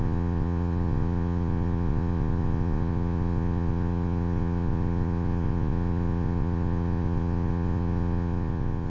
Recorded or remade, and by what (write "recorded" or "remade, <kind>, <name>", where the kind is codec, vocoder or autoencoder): remade, vocoder, Vocos